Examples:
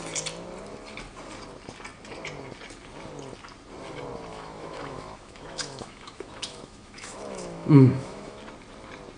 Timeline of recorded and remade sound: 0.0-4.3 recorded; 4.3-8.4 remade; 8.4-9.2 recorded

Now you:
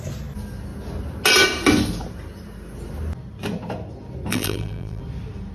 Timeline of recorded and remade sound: 0.0-4.3 recorded; 4.3-5.0 remade; 5.0-5.5 recorded

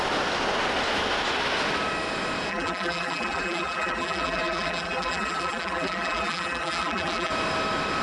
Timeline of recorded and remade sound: 0.0-2.5 recorded; 2.5-7.3 remade; 7.3-8.0 recorded

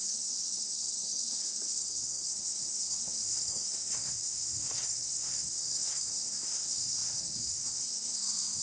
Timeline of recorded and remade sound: 0.0-8.6 remade

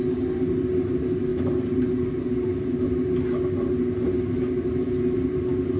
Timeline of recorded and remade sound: 0.0-5.8 recorded

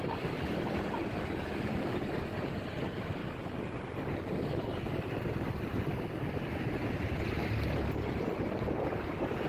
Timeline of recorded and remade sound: 0.0-3.2 remade; 3.2-4.9 recorded; 4.9-9.5 remade